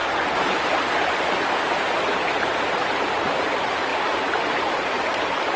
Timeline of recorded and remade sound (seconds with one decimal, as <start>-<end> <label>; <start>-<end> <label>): 0.0-5.6 remade